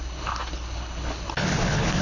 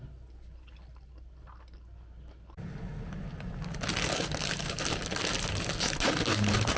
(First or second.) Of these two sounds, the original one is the second